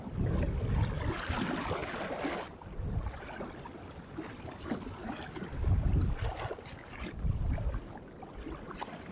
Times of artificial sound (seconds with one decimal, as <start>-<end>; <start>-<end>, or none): none